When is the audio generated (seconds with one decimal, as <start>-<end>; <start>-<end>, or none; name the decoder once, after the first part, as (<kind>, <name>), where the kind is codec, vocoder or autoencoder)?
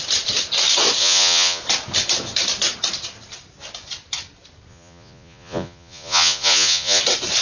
1.0-1.6 (vocoder, Vocos); 4.7-7.0